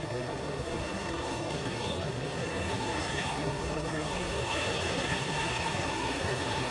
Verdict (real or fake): fake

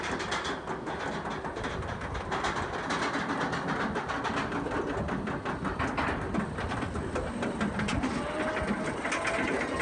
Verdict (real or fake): real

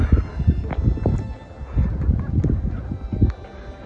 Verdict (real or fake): real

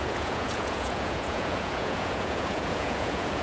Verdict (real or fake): fake